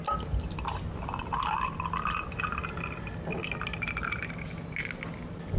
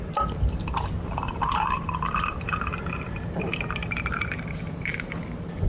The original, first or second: first